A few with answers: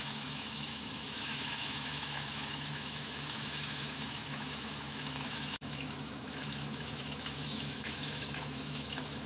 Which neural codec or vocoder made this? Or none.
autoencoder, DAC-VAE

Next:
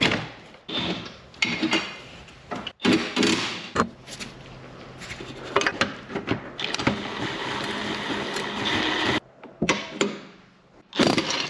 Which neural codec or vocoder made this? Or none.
none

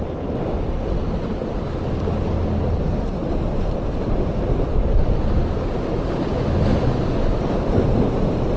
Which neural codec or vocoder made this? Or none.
none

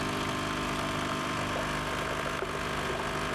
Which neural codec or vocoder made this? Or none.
none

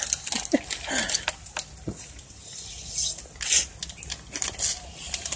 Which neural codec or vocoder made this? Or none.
none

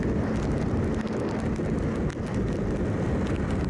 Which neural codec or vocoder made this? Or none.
none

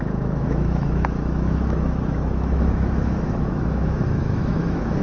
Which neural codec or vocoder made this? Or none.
autoencoder, DAC-VAE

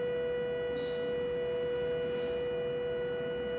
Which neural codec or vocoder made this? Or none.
none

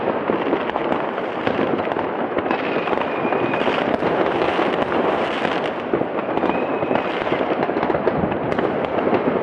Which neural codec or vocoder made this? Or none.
none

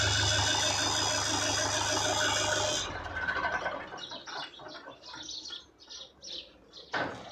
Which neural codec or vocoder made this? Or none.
none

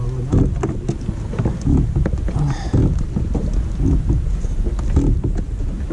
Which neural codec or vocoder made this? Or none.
none